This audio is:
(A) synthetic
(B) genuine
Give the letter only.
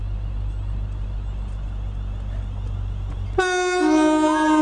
B